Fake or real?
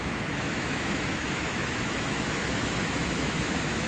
fake